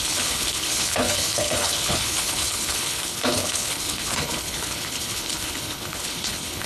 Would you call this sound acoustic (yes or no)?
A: no